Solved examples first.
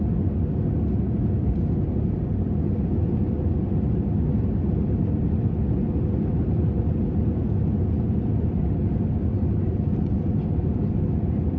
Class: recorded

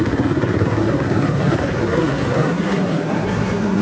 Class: remade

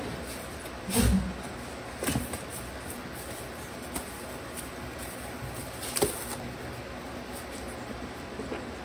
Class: recorded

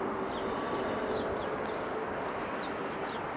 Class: recorded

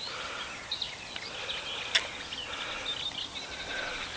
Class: recorded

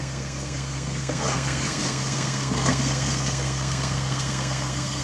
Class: remade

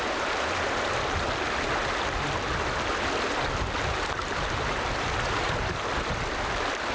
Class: recorded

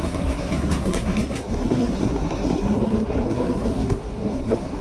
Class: remade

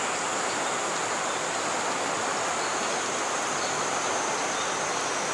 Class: recorded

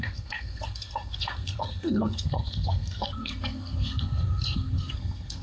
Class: remade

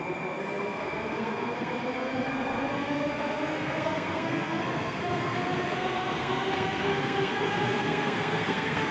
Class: remade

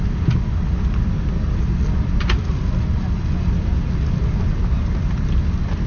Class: recorded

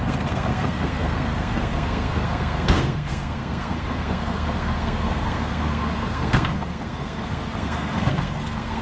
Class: remade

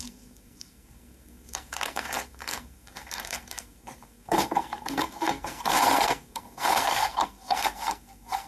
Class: remade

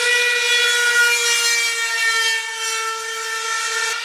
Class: recorded